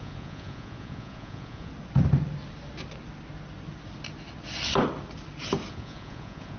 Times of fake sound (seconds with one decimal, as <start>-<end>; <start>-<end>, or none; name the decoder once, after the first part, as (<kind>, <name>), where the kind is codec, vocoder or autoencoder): 0.0-1.7 (vocoder, Vocos); 5.7-6.6